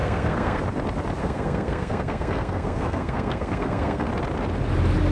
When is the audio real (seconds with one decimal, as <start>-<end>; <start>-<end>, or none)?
0.6-1.2; 4.1-5.1